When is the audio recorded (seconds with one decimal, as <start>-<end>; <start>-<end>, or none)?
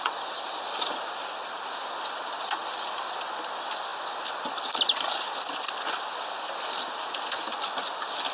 0.0-8.3